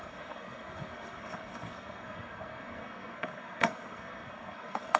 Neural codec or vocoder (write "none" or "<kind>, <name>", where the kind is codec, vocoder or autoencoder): codec, SNAC